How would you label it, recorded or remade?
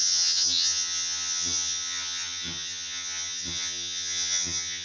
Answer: remade